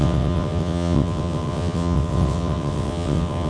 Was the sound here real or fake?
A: fake